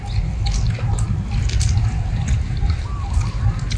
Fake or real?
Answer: real